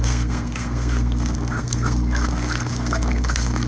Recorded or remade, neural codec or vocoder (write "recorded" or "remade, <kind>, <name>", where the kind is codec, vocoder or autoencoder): remade, codec, SNAC